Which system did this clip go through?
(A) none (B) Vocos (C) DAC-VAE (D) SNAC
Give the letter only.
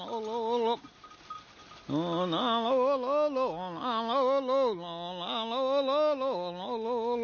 A